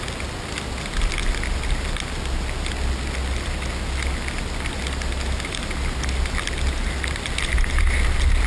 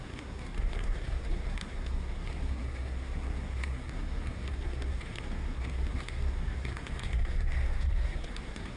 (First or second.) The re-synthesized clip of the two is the second